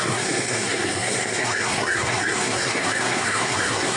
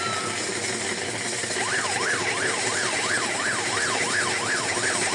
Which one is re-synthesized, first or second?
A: first